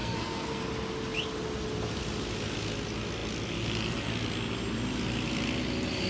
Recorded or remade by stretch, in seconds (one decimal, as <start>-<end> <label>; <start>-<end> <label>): 0.0-0.6 remade; 0.6-6.1 recorded